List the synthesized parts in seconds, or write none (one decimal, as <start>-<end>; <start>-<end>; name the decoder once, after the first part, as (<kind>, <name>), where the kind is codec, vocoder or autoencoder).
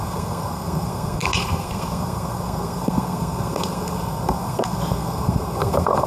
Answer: 0.0-6.1 (codec, SNAC)